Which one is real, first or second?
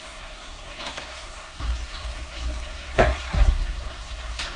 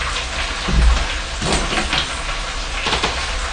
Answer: second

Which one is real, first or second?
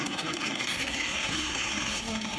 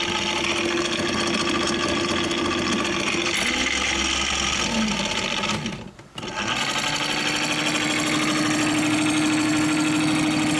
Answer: second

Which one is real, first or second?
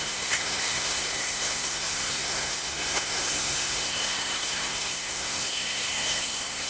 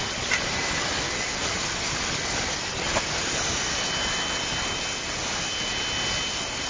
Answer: second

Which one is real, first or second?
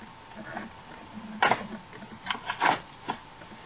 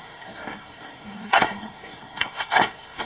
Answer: first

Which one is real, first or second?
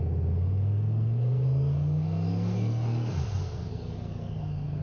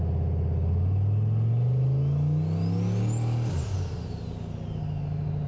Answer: second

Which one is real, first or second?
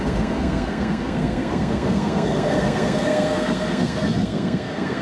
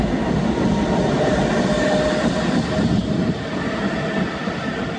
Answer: second